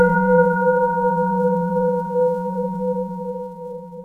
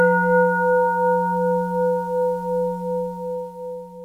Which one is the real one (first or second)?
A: second